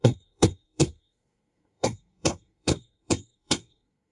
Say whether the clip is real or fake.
fake